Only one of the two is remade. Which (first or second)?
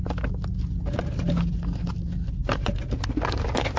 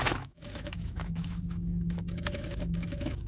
second